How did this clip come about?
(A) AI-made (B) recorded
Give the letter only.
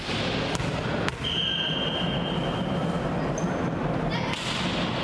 B